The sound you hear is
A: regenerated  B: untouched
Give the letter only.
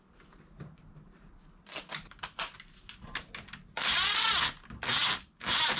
B